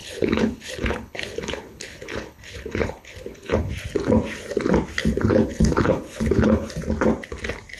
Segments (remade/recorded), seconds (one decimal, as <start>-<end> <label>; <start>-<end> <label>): 0.0-3.7 remade; 3.7-5.0 recorded; 5.0-6.7 remade; 6.7-7.8 recorded

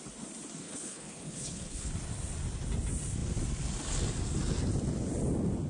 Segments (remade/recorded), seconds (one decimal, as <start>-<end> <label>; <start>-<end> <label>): 0.0-0.6 recorded; 0.6-1.9 remade; 1.9-5.7 recorded

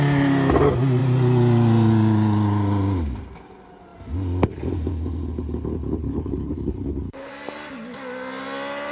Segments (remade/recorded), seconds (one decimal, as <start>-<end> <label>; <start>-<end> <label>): 0.0-6.0 recorded; 6.0-7.3 remade; 7.3-8.9 recorded

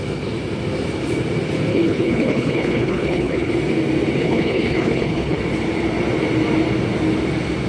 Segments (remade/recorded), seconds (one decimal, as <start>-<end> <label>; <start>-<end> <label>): 0.0-1.7 recorded; 1.7-3.5 remade; 3.5-4.2 recorded; 4.2-5.4 remade; 5.4-7.7 recorded

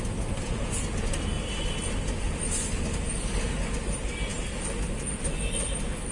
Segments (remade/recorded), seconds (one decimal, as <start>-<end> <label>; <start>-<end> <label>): 0.0-6.1 recorded

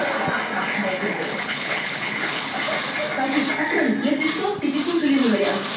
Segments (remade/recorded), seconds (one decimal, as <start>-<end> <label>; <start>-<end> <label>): 0.0-1.1 recorded; 1.1-2.5 remade; 2.5-5.8 recorded

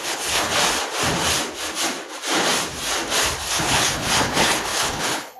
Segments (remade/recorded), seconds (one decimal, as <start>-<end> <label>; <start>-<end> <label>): 0.0-0.6 remade; 0.6-3.5 recorded; 3.5-5.4 remade

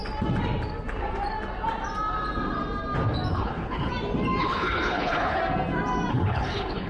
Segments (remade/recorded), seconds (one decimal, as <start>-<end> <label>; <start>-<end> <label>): 0.0-3.3 recorded; 3.3-3.9 remade; 3.9-4.4 recorded; 4.4-5.4 remade; 5.4-6.1 recorded; 6.1-6.9 remade